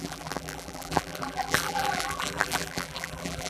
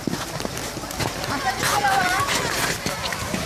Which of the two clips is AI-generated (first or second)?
first